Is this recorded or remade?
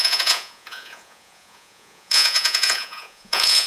remade